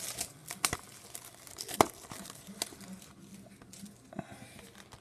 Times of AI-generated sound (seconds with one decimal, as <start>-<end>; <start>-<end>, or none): none